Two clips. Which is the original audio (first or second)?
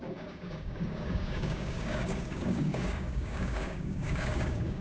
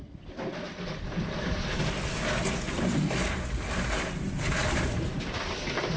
second